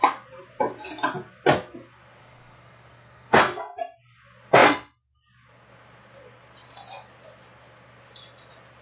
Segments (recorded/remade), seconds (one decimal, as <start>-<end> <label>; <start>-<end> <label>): 0.0-2.2 recorded; 2.2-3.4 remade; 3.4-8.8 recorded